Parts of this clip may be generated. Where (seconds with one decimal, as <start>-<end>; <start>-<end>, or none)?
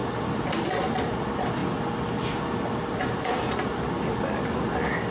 none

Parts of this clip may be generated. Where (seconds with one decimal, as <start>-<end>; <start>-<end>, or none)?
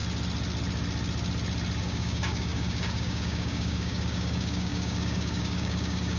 1.8-6.2